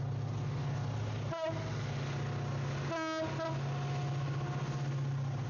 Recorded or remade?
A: recorded